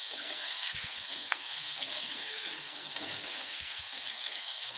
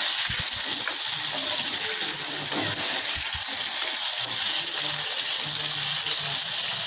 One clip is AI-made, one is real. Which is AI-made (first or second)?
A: first